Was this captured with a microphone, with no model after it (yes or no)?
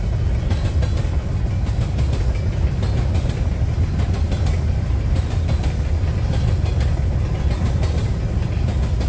yes